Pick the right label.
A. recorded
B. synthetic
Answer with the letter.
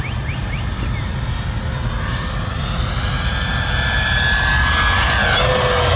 A